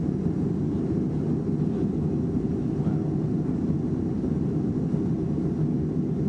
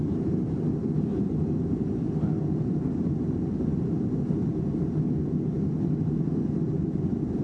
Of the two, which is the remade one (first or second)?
second